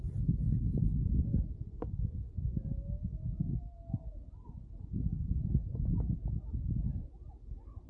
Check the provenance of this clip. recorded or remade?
recorded